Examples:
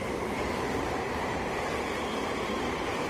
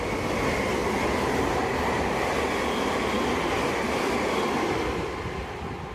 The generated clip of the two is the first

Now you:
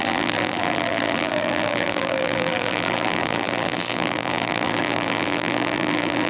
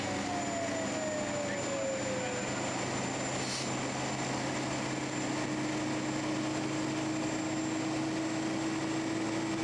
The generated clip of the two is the first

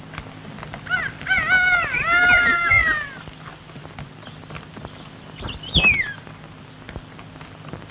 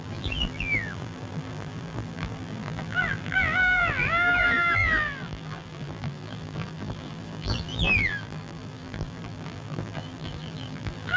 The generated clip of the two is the second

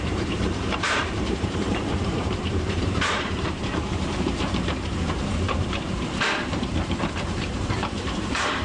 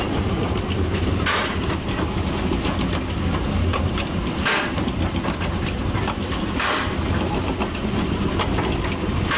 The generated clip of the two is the first